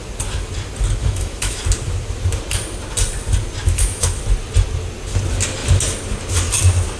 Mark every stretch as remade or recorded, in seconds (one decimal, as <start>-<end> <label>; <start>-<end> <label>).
0.0-1.0 recorded; 1.0-1.6 remade; 1.6-3.6 recorded; 3.6-4.2 remade; 4.2-7.0 recorded